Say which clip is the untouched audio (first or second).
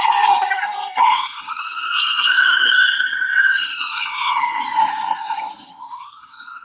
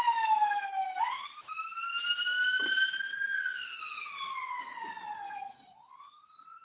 second